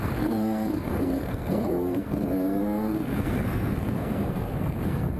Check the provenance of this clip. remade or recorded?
remade